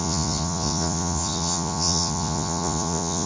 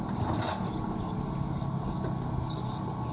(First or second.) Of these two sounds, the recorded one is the second